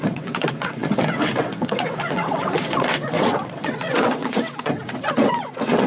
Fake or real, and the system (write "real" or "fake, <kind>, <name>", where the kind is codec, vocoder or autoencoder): fake, vocoder, WaveNeXt